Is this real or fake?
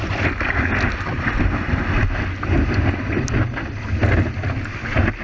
real